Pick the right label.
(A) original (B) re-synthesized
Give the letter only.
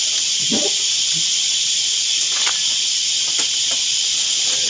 A